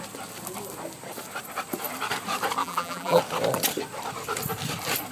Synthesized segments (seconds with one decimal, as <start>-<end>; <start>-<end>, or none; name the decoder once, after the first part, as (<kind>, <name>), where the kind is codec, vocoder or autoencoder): 2.6-3.2 (vocoder, BigVGAN v2)